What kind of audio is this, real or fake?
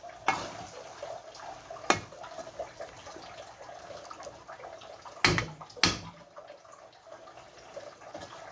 real